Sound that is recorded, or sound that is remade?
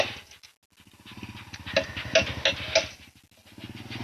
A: recorded